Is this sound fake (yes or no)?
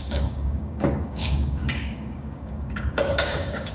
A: yes